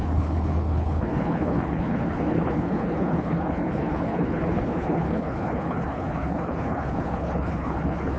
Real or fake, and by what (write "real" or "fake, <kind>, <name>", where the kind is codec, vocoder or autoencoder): fake, codec, HILCodec